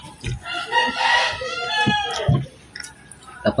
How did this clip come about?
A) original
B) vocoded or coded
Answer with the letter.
A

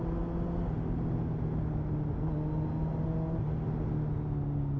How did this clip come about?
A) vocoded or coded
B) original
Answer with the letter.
B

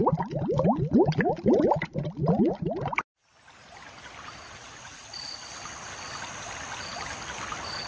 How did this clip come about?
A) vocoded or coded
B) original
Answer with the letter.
B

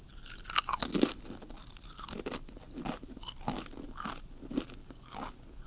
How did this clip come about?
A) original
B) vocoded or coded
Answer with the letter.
A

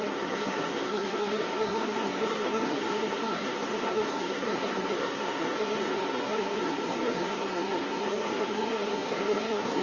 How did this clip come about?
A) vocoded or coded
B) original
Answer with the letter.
A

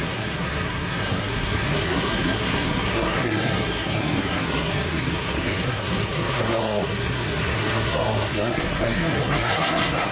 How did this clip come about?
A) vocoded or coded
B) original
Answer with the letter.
A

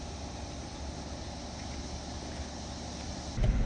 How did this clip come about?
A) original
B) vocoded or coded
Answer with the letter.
A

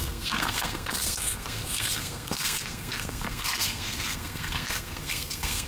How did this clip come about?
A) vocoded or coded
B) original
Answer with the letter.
A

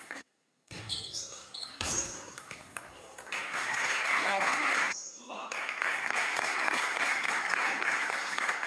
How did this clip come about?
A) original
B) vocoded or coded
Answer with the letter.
B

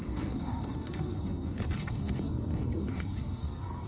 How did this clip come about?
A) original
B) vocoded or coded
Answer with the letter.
B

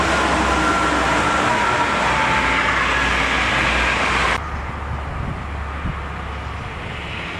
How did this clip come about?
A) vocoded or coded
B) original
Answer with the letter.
B